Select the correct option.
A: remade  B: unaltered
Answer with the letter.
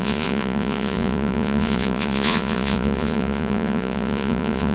A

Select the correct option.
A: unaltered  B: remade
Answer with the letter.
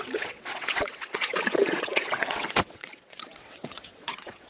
B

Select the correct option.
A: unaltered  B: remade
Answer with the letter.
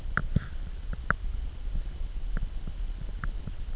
A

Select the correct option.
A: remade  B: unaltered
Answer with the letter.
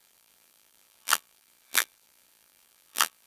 A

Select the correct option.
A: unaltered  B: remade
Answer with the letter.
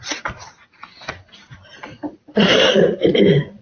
B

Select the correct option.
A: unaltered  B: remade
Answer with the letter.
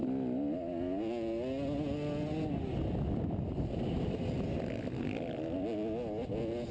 A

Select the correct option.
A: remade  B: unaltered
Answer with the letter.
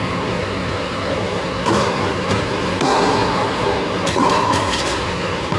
A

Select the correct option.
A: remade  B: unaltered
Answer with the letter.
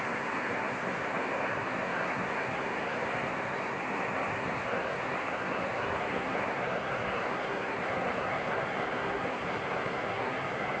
A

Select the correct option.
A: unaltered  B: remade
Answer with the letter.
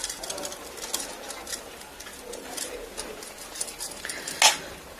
A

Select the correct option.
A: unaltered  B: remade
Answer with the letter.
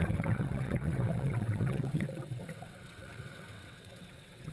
B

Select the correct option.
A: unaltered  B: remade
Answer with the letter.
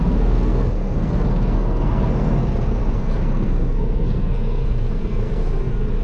B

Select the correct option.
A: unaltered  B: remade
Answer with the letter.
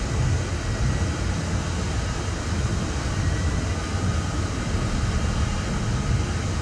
A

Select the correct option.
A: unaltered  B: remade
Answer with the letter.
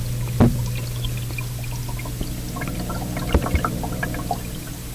A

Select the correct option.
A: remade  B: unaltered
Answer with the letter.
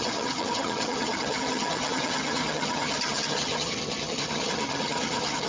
A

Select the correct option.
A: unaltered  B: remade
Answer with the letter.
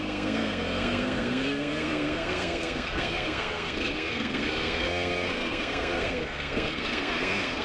B